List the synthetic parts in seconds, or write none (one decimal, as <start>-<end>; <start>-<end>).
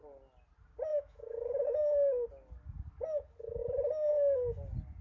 0.9-1.8